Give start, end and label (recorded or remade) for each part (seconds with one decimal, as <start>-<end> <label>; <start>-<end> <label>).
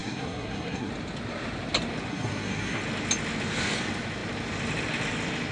0.0-0.9 remade; 0.9-2.1 recorded; 2.1-2.8 remade; 2.8-5.5 recorded